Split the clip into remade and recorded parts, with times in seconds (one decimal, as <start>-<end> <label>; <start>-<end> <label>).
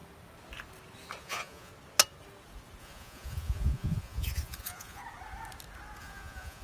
0.0-1.2 recorded; 1.2-1.7 remade; 1.7-2.8 recorded; 2.8-5.0 remade; 5.0-6.0 recorded; 6.0-6.6 remade